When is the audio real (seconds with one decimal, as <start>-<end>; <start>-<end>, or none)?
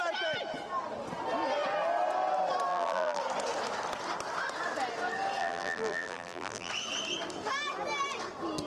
0.0-2.7; 3.2-5.4; 6.7-8.7